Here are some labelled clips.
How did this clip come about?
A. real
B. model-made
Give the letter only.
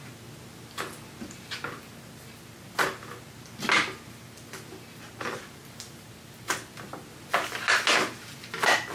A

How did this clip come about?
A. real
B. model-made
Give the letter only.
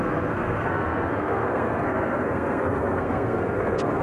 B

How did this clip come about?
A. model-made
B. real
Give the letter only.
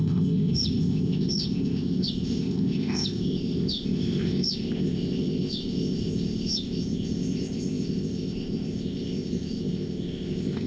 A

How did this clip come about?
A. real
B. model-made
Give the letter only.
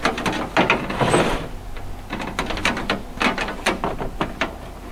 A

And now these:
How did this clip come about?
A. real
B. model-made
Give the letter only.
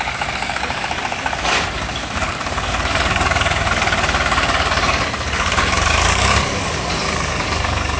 B